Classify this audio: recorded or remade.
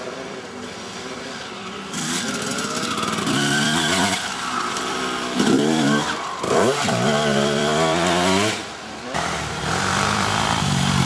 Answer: remade